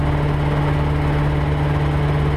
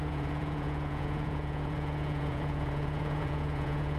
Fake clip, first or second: second